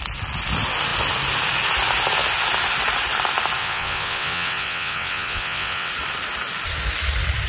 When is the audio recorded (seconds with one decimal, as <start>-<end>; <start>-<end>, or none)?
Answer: 0.0-3.6; 5.9-7.5